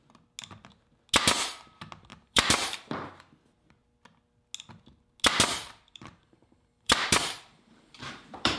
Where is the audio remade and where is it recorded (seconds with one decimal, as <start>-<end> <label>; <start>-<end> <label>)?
0.0-2.1 recorded; 2.1-3.1 remade; 3.1-5.6 recorded; 5.6-8.6 remade